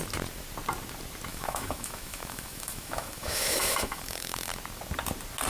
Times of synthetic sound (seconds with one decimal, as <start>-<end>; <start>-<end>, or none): 1.3-4.5